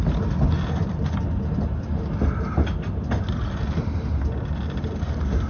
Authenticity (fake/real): real